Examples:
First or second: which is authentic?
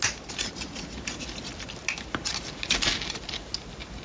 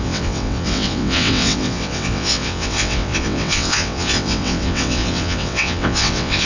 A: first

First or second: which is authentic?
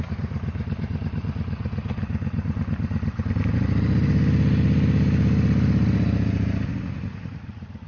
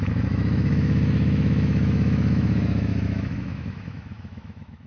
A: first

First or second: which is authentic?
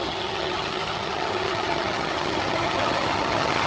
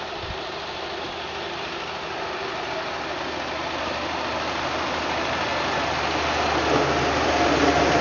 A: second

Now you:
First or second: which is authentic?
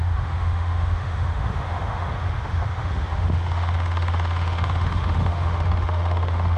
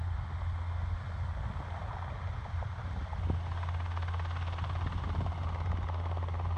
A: second